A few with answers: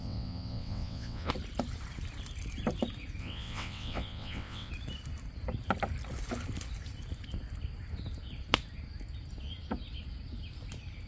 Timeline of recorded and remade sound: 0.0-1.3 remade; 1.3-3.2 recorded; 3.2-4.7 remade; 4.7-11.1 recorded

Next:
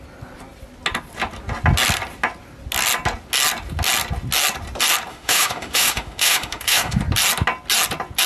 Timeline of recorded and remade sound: 0.0-5.1 recorded; 5.1-7.0 remade; 7.0-8.3 recorded